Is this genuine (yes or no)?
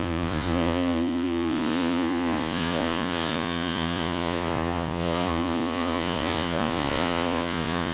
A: no